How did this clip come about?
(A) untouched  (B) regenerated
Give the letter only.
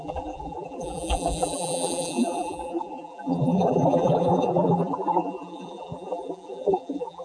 B